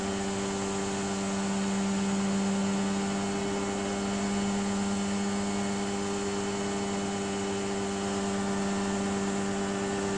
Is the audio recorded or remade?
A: recorded